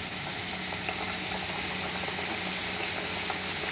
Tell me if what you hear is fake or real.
real